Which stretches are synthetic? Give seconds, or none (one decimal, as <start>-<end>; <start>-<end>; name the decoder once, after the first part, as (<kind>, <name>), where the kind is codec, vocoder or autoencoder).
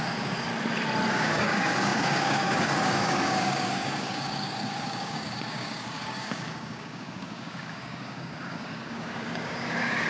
0.0-0.5 (codec, DAC); 1.1-10.1